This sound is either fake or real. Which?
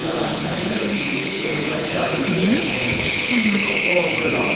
fake